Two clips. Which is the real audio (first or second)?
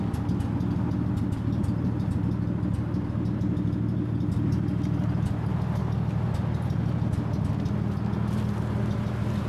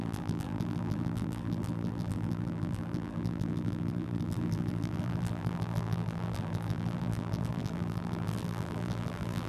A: first